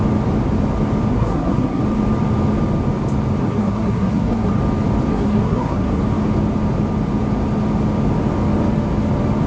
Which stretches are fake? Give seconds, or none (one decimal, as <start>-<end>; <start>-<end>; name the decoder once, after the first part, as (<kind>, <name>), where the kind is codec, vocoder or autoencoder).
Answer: 1.1-1.8 (codec, SNAC); 3.4-4.5; 5.1-6.0